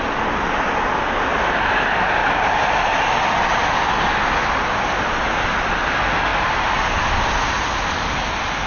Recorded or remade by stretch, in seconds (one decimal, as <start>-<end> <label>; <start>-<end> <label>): 0.0-2.2 recorded; 2.2-2.8 remade; 2.8-6.3 recorded; 6.3-7.3 remade; 7.3-8.7 recorded